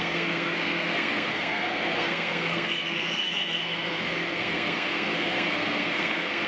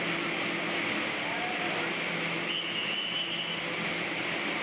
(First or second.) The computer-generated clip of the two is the first